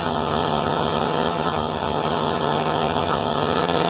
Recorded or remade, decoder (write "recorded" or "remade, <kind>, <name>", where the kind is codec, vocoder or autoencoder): remade, vocoder, HiFi-GAN